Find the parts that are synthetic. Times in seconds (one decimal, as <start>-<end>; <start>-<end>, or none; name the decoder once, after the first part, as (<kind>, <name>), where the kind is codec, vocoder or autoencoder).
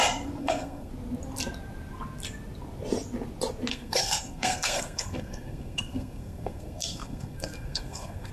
0.4-0.9 (codec, SNAC); 3.7-8.3